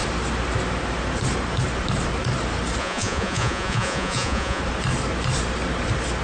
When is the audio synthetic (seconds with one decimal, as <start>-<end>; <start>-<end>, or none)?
2.8-4.6